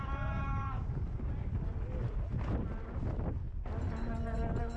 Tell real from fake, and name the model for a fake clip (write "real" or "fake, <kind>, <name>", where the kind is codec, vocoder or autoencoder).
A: real